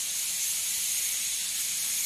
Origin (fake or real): real